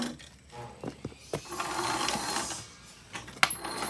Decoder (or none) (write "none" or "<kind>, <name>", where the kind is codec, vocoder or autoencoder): none